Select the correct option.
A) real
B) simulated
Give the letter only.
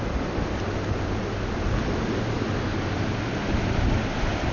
A